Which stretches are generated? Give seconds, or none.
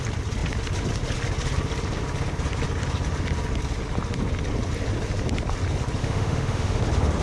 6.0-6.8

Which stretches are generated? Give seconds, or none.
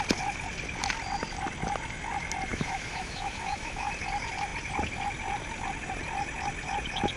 2.5-3.9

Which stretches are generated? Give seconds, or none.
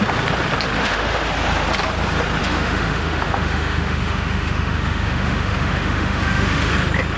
0.8-1.3; 2.4-6.7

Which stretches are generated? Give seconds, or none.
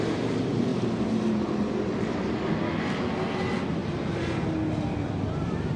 none